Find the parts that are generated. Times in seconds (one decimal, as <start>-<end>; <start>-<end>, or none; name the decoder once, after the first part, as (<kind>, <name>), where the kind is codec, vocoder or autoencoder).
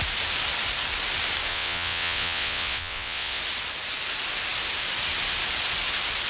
1.5-3.4 (vocoder, WaveNeXt)